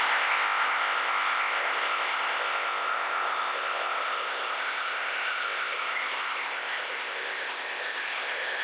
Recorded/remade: remade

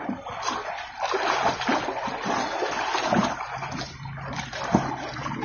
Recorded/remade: recorded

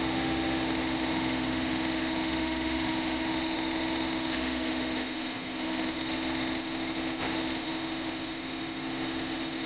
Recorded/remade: remade